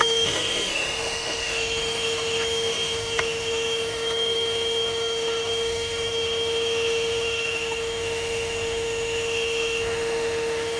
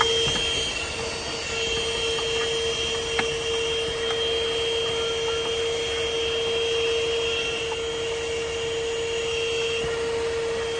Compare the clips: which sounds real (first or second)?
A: second